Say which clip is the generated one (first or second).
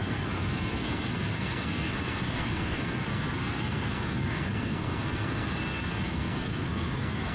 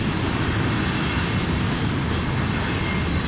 first